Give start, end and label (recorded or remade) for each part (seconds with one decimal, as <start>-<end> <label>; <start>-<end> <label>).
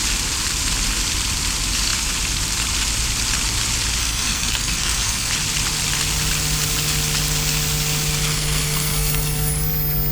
0.0-4.0 recorded; 4.0-5.3 remade; 5.3-8.3 recorded; 8.3-9.5 remade; 9.5-10.1 recorded